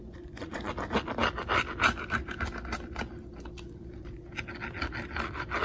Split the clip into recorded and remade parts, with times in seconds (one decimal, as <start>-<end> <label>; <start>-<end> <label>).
0.0-0.7 remade; 0.7-5.6 recorded